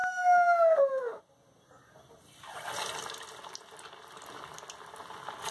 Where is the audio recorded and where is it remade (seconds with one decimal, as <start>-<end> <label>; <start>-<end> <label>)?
0.0-1.2 remade; 1.2-5.5 recorded